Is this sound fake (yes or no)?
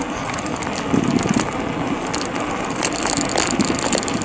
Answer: no